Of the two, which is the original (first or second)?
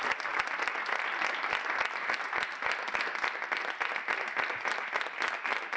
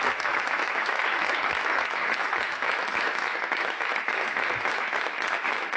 first